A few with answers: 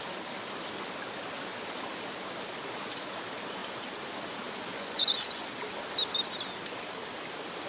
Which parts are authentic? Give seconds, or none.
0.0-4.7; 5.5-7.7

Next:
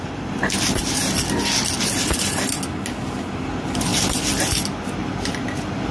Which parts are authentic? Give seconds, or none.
0.0-5.9

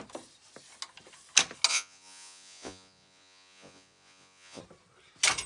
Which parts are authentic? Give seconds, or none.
0.0-1.7; 4.6-5.5

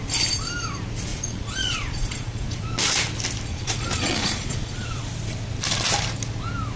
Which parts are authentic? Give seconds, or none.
0.0-1.1; 2.6-3.5; 5.0-6.8

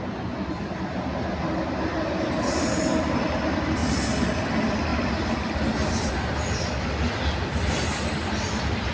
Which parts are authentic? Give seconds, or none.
0.0-8.9

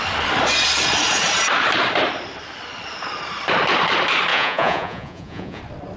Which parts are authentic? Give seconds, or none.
0.0-4.3; 5.6-6.0

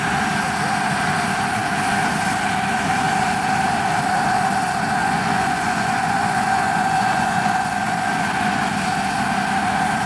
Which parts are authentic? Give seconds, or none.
0.0-5.0; 8.7-10.1